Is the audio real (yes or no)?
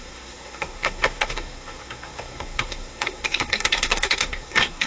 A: no